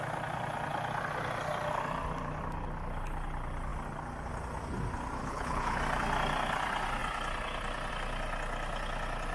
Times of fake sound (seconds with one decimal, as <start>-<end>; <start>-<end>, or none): 5.2-5.8